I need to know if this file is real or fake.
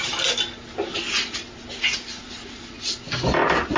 real